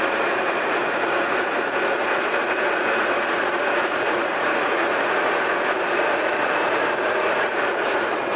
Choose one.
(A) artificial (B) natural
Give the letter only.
A